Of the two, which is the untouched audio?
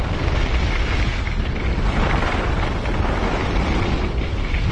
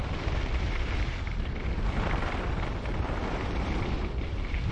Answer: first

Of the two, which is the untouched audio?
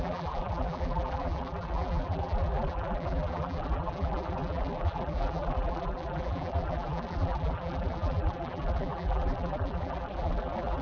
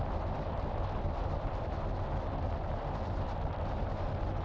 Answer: second